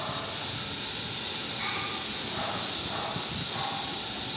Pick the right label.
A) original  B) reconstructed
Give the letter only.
A